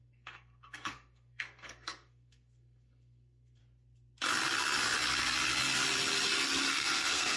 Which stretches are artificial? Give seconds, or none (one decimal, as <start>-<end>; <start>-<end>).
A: 0.0-3.6; 6.7-7.4